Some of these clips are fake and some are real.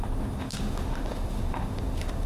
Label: fake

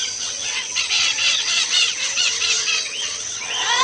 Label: fake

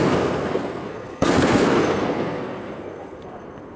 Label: fake